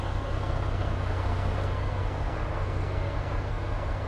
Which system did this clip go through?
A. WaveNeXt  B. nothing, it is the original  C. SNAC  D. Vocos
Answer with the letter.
C